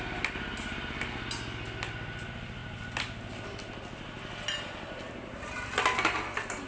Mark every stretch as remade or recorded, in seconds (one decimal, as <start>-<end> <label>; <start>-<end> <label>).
0.0-6.7 recorded